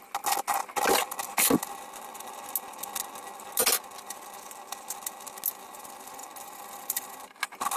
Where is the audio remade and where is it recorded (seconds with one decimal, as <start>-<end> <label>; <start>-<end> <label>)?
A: 0.0-7.8 recorded